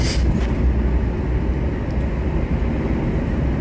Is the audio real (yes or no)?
yes